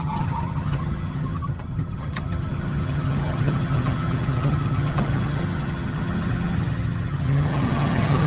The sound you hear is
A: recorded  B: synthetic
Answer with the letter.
B